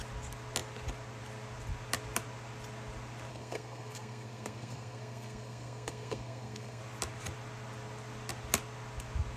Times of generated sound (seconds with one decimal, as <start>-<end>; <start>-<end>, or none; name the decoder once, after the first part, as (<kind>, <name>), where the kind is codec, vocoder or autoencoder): 3.3-6.8 (codec, SNAC)